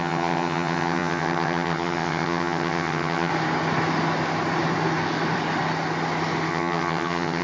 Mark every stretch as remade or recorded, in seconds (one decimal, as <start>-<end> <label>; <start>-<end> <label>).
0.0-3.3 remade; 3.3-6.5 recorded; 6.5-7.4 remade